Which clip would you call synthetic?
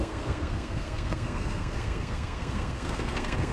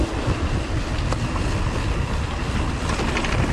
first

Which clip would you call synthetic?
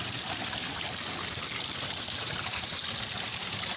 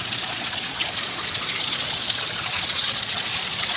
second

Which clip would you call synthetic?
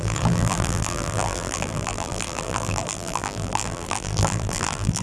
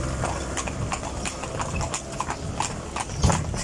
first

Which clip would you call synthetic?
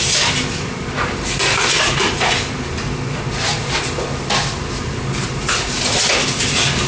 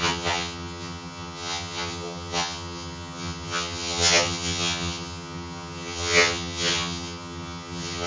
second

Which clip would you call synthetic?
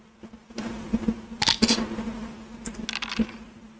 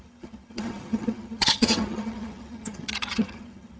second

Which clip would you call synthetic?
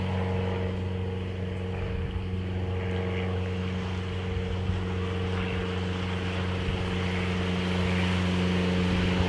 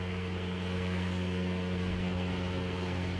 second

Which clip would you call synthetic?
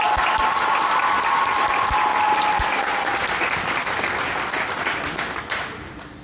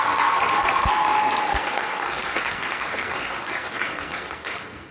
second